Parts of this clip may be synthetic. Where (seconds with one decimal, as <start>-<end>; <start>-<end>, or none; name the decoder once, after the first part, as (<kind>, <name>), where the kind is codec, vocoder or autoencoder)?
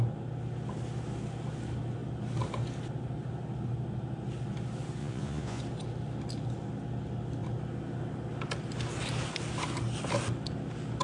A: 5.0-5.6 (vocoder, Vocos)